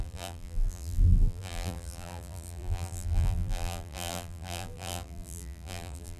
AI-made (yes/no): yes